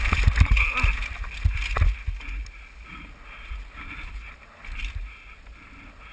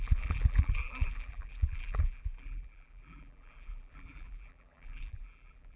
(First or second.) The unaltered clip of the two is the first